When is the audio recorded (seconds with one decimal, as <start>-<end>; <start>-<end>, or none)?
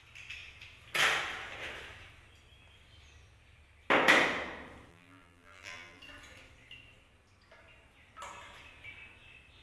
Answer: 0.0-4.9; 6.0-9.6